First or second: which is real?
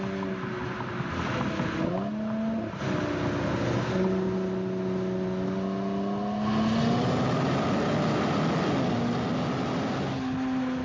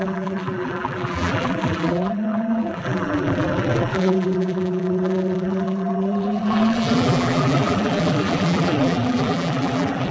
first